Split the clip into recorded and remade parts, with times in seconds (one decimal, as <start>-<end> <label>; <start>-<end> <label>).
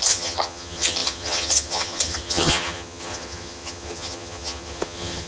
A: 0.0-5.3 remade